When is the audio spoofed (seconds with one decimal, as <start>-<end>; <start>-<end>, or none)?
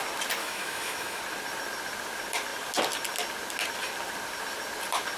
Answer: 0.4-1.2